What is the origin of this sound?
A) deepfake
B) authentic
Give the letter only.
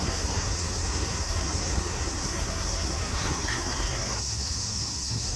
A